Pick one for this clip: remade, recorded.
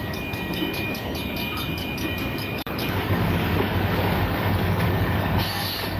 remade